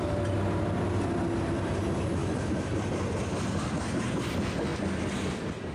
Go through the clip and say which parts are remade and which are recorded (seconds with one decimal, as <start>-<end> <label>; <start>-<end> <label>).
0.0-5.7 recorded